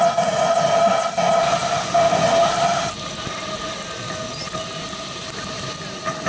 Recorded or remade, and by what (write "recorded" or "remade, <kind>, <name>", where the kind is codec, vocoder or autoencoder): recorded